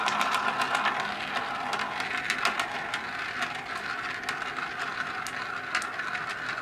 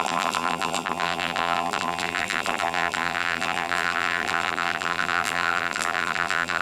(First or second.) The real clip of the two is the first